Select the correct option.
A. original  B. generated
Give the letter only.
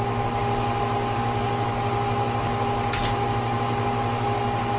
A